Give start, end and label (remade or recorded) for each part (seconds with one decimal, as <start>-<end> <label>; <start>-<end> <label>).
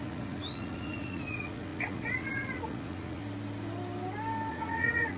0.0-3.2 remade; 3.2-4.5 recorded; 4.5-5.2 remade